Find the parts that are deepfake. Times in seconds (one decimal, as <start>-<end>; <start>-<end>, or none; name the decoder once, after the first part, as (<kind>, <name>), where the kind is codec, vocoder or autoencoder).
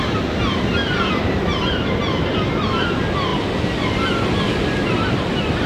0.8-2.0 (vocoder, BigVGAN v2)